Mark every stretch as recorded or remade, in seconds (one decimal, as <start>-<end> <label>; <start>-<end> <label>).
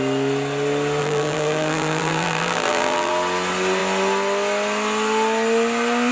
0.0-1.0 recorded; 1.0-3.1 remade; 3.1-6.1 recorded